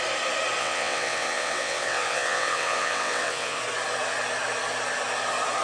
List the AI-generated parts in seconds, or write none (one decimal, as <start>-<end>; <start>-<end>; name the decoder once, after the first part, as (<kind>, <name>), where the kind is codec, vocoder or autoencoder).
0.6-3.6 (vocoder, WaveNeXt)